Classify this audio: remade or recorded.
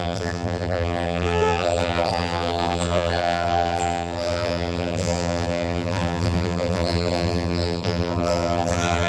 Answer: remade